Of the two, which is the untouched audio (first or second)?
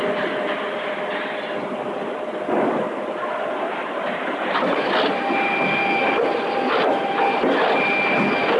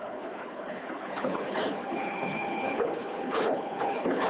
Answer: first